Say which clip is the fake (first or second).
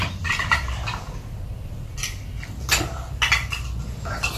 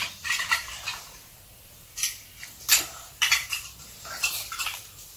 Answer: second